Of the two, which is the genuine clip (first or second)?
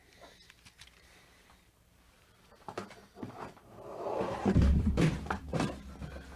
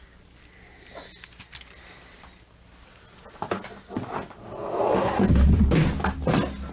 second